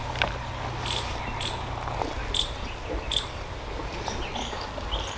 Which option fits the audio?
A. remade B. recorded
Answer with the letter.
B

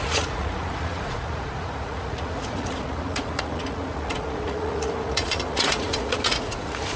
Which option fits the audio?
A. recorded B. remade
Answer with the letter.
B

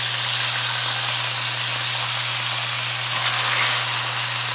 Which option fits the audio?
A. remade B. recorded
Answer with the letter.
B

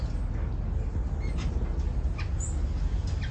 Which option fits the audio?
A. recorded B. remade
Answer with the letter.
A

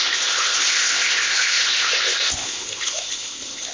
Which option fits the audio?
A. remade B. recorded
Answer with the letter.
A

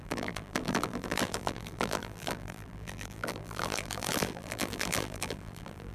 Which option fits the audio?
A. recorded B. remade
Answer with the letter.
B